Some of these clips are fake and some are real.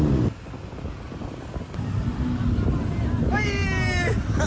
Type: real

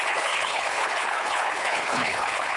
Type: fake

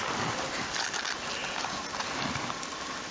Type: real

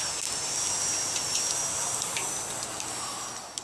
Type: real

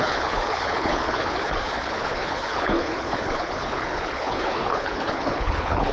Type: fake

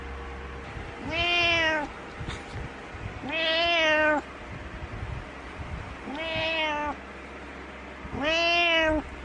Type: real